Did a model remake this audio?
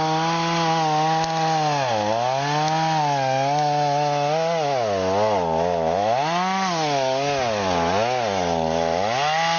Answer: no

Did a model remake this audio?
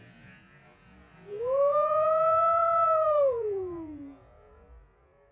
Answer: yes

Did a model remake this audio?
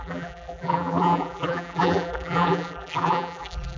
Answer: yes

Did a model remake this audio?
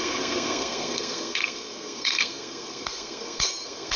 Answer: yes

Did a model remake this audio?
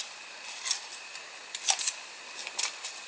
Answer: no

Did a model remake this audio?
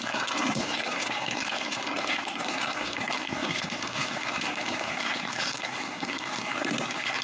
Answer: yes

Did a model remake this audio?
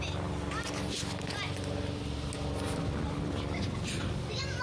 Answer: no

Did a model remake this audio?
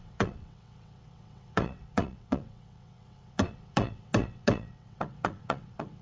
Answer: yes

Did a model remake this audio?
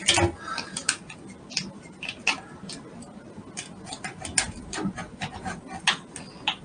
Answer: no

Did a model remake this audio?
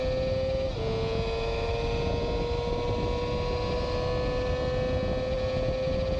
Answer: no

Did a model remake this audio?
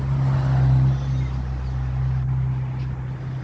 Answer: no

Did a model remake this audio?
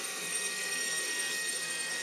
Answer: yes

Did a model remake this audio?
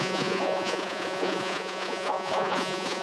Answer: yes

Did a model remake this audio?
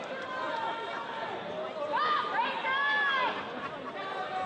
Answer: no